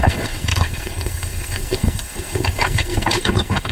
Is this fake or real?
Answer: fake